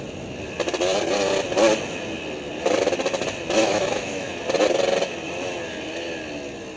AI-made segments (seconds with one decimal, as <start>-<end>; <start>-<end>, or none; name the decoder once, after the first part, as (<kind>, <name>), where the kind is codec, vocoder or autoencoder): 3.6-4.4 (autoencoder, DAC-VAE)